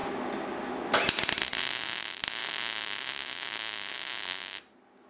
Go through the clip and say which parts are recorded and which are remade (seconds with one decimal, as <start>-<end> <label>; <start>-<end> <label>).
0.0-5.1 recorded